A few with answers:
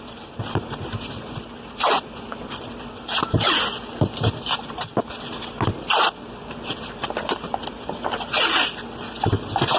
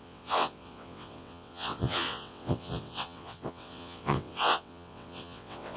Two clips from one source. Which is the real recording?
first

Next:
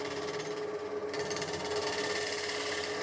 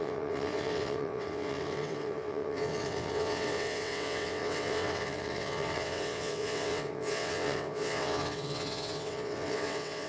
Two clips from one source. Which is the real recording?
first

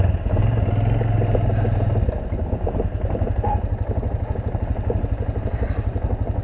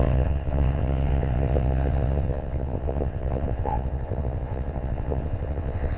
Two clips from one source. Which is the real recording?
first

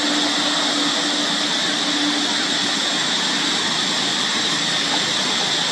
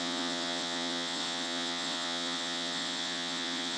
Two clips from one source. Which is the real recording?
first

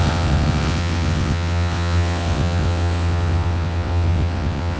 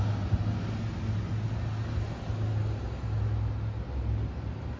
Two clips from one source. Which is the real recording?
second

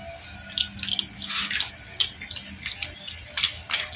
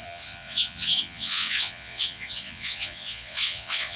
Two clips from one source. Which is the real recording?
first